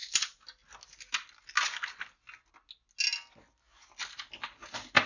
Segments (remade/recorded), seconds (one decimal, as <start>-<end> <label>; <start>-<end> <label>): 0.0-5.1 recorded